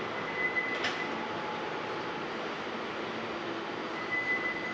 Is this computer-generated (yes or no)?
no